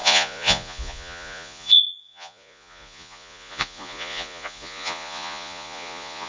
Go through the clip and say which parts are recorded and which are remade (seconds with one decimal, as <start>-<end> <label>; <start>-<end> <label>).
0.0-6.3 remade